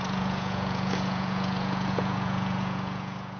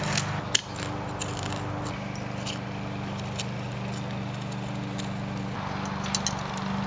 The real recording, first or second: second